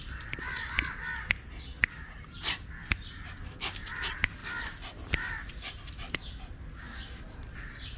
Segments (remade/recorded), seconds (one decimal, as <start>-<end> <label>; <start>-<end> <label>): 0.0-4.4 recorded; 4.4-6.6 remade; 6.6-8.0 recorded